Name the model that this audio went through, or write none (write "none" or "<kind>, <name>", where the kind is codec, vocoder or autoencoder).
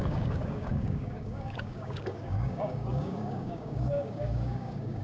codec, DAC